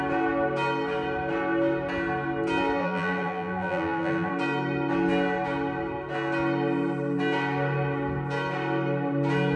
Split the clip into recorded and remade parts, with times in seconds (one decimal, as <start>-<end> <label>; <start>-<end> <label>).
0.0-2.8 recorded; 2.8-4.3 remade; 4.3-9.6 recorded